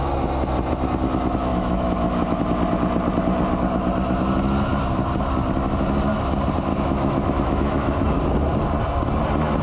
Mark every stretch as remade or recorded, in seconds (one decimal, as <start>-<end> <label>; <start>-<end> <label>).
0.0-1.5 recorded; 1.5-2.4 remade; 2.4-6.7 recorded; 6.7-8.2 remade; 8.2-9.6 recorded